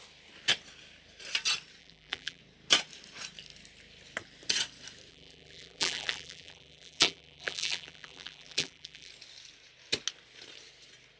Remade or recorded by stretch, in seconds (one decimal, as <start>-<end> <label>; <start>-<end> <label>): 0.0-1.8 recorded; 1.8-2.4 remade; 2.4-5.1 recorded; 5.1-9.1 remade; 9.1-11.2 recorded

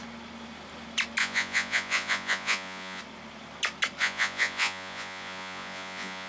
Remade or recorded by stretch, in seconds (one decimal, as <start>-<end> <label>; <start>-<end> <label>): 0.0-1.2 recorded; 1.2-3.0 remade; 3.0-4.0 recorded; 4.0-6.3 remade

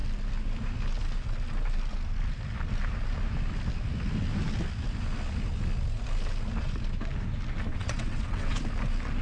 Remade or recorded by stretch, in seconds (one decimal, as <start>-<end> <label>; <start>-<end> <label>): 0.0-7.7 recorded; 7.7-8.5 remade; 8.5-9.2 recorded